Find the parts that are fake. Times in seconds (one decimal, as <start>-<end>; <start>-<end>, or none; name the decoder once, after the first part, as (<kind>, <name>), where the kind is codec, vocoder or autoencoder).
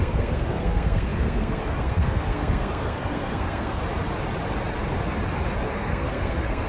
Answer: 0.0-3.8 (codec, SNAC); 5.7-6.7